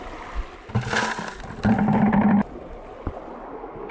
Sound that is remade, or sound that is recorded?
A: recorded